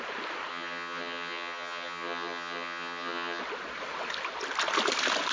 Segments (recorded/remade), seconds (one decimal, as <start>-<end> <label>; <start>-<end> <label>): 0.0-0.5 recorded; 0.5-3.4 remade; 3.4-5.3 recorded